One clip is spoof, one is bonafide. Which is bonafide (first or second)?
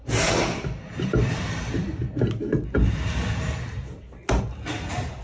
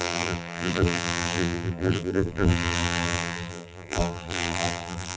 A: first